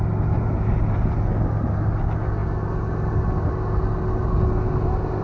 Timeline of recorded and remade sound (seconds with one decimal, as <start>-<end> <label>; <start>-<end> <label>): 0.0-5.2 recorded